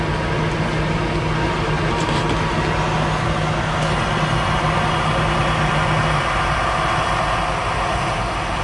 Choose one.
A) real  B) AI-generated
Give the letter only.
A